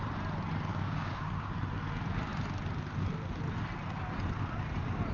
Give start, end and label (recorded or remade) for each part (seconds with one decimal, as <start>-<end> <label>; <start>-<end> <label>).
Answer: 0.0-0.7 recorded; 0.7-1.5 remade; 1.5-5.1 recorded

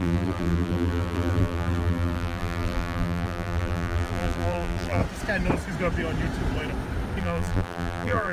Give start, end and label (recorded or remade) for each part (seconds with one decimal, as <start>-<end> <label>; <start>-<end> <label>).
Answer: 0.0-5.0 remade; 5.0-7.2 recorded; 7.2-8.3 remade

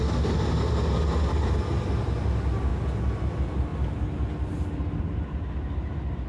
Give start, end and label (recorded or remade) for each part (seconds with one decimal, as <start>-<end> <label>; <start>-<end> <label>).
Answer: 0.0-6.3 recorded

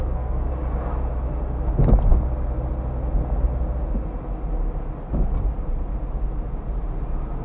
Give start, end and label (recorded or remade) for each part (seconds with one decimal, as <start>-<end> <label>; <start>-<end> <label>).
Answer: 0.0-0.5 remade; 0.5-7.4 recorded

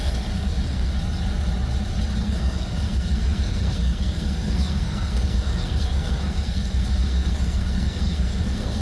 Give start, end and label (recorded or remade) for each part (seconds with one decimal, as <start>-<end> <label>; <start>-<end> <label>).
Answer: 0.0-0.9 remade; 0.9-2.2 recorded; 2.2-8.8 remade

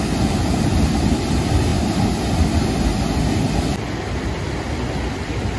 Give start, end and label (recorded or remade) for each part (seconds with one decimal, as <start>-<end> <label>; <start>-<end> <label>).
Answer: 0.0-5.6 recorded

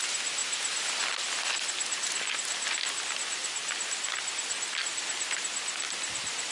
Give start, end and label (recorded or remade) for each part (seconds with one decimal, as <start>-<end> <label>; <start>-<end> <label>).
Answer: 0.0-6.5 recorded

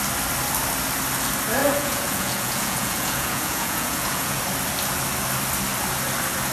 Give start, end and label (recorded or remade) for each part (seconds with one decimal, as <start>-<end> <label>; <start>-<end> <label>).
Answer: 0.0-1.6 recorded; 1.6-4.4 remade; 4.4-6.5 recorded